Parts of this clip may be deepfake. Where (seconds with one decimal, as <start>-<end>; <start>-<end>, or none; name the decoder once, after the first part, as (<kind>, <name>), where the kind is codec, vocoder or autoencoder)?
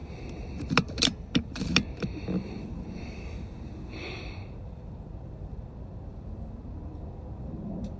0.0-3.0 (vocoder, BigVGAN v2); 6.1-6.7